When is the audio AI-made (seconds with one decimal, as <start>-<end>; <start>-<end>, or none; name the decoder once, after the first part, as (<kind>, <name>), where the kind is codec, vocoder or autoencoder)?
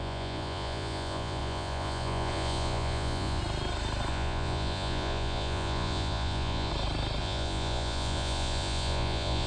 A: 0.0-3.4 (vocoder, Vocos); 4.1-6.7; 7.2-9.5